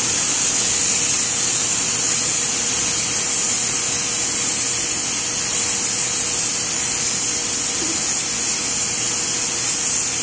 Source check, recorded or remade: recorded